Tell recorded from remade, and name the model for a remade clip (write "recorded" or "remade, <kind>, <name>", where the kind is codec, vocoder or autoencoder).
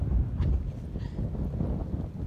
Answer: recorded